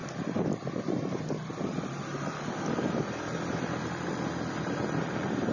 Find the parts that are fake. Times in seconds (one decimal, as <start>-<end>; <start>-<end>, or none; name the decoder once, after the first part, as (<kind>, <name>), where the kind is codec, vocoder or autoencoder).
0.0-1.3 (vocoder, BigVGAN v2); 2.1-5.5